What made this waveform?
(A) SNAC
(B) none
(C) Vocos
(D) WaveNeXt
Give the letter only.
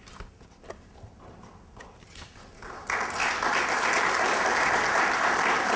B